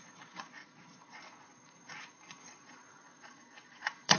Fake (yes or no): yes